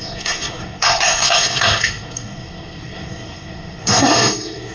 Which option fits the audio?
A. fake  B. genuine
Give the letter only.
A